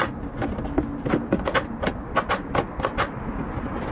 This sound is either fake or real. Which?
real